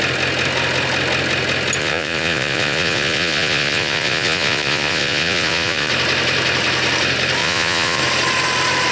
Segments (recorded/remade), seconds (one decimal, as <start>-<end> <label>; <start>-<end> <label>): 0.0-1.8 recorded; 1.8-5.9 remade; 5.9-7.4 recorded; 7.4-8.0 remade; 8.0-8.9 recorded